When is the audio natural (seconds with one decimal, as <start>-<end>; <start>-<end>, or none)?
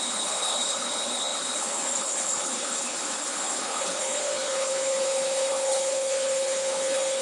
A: none